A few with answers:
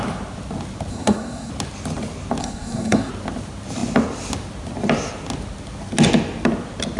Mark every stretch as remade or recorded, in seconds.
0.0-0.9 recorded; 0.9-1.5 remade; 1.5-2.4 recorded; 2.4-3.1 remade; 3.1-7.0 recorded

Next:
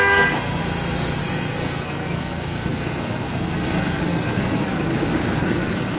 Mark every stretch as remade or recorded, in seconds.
0.0-0.6 remade; 0.6-1.2 recorded; 1.2-4.9 remade; 4.9-5.4 recorded; 5.4-6.0 remade